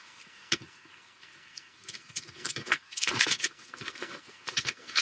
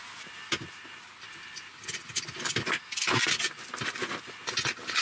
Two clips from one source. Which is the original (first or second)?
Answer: second